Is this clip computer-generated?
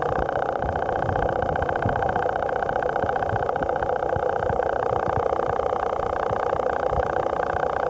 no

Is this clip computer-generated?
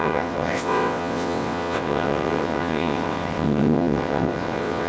yes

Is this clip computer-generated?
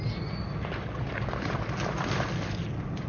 no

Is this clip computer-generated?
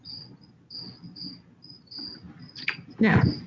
no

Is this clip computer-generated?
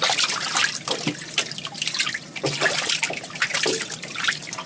no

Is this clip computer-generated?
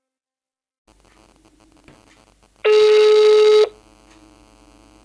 no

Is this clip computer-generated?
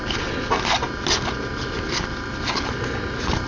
no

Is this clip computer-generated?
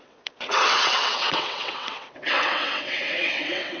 yes